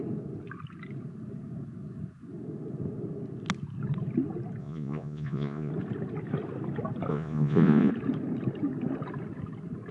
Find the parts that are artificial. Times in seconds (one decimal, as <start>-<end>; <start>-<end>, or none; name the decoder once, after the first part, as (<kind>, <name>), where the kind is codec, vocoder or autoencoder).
4.6-5.7 (vocoder, Vocos); 7.1-7.9